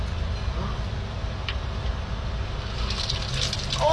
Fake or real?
real